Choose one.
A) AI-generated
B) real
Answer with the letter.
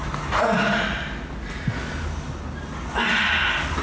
B